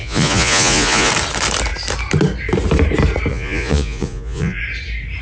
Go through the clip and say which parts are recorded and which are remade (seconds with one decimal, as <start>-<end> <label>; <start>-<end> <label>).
0.0-1.1 remade; 1.1-3.3 recorded; 3.3-4.6 remade; 4.6-5.2 recorded